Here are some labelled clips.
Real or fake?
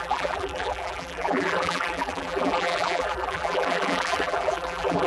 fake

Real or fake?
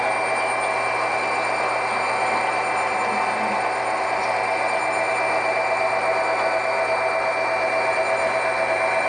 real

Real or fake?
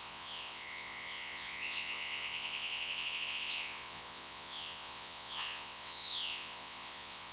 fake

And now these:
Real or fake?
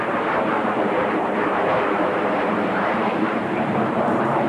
fake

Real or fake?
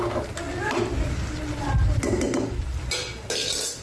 real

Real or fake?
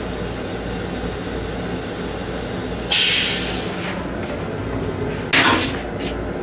real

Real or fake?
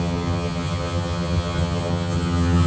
fake